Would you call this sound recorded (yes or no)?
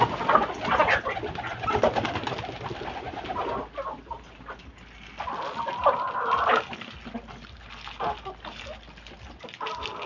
yes